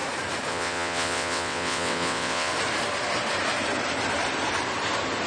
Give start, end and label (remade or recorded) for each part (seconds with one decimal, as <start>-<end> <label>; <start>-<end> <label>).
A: 0.0-0.5 recorded; 0.5-2.5 remade; 2.5-5.3 recorded